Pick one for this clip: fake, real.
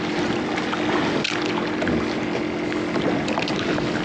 real